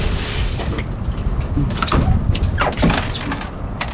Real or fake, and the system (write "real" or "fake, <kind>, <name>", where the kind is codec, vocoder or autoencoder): real